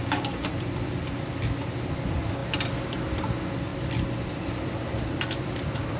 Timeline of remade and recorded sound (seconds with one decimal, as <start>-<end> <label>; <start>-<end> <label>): 0.0-0.5 remade; 0.5-6.0 recorded